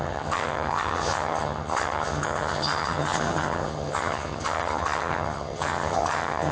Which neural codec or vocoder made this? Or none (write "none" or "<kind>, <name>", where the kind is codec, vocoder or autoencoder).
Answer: vocoder, HiFi-GAN